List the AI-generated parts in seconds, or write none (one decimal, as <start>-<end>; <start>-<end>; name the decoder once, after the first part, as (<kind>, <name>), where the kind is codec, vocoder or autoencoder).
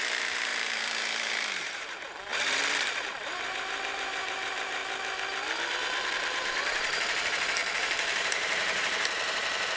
0.0-2.3 (vocoder, BigVGAN v2); 3.0-4.8; 6.1-9.8